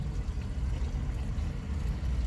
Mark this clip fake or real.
real